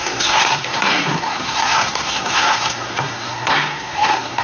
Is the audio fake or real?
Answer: fake